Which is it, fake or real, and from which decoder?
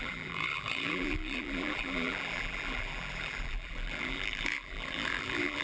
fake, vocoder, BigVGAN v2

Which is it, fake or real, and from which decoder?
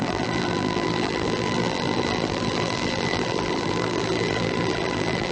fake, vocoder, BigVGAN v2